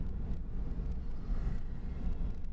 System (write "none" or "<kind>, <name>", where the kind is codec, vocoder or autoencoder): none